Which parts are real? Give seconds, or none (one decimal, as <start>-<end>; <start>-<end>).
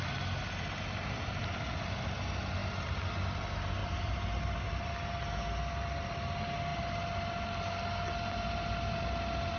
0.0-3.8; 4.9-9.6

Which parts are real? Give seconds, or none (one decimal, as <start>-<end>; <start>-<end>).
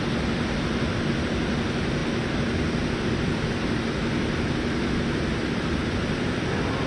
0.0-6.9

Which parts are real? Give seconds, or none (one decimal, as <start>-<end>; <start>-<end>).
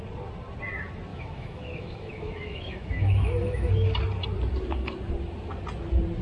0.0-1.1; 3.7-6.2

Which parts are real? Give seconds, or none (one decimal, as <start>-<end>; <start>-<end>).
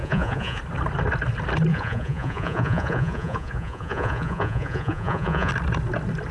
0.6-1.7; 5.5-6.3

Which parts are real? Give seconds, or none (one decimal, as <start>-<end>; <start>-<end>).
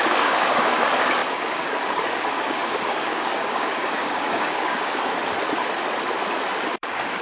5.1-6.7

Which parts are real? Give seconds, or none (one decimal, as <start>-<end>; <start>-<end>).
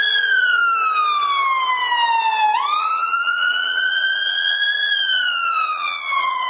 0.6-2.8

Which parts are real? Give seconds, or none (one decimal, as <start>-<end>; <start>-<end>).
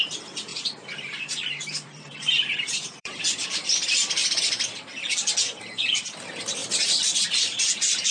0.0-0.5; 3.2-6.6; 7.6-8.1